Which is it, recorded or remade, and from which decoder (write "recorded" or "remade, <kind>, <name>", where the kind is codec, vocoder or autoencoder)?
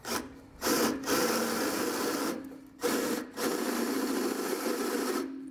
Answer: recorded